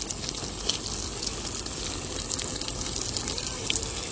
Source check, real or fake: real